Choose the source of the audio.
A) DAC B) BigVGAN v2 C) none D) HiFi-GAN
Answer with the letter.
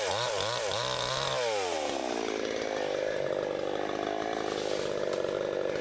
C